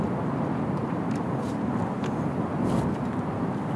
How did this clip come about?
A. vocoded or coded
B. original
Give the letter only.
B